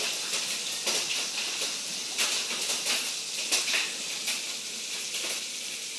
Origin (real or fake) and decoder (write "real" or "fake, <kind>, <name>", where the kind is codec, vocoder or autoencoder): real